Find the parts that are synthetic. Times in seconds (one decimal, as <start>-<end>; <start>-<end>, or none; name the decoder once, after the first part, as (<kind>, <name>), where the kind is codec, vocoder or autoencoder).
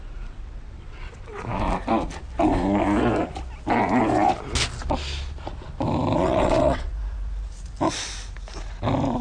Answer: 0.0-1.4 (vocoder, WaveNeXt); 6.2-6.9